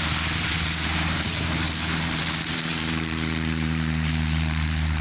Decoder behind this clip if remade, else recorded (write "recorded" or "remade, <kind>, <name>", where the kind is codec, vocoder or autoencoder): remade, vocoder, BigVGAN v2